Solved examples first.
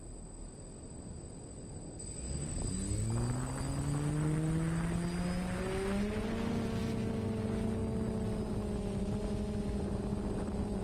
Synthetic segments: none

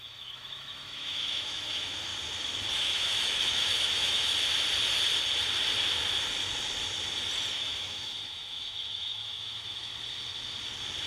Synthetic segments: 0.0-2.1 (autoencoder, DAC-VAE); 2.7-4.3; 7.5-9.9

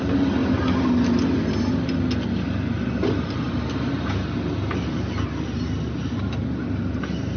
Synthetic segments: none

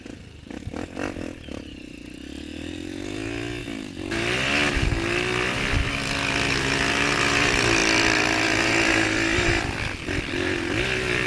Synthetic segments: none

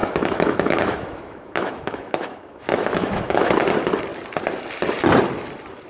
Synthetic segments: 0.0-3.5 (autoencoder, DAC-VAE)